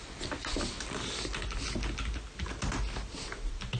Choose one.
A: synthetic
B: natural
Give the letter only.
B